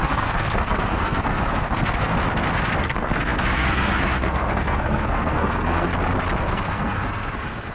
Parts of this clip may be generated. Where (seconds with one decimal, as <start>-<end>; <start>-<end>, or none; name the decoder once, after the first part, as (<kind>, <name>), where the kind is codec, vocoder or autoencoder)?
0.0-2.1 (codec, SNAC); 2.8-5.9; 6.4-7.7